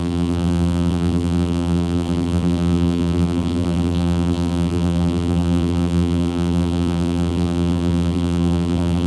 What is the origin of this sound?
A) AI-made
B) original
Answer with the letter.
A